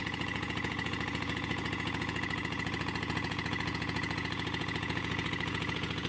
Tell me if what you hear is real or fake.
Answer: fake